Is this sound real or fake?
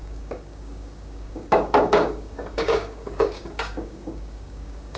fake